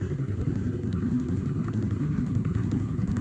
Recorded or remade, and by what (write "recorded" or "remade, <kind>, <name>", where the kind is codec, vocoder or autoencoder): remade, codec, SNAC